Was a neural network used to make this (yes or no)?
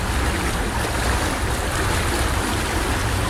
no